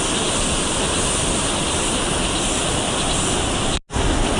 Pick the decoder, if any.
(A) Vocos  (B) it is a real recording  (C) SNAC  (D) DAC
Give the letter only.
B